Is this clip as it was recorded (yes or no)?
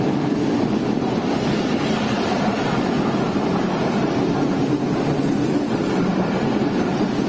yes